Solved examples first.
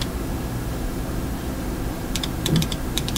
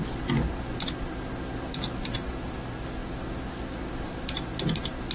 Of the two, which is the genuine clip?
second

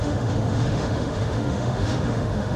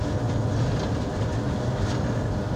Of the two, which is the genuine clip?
second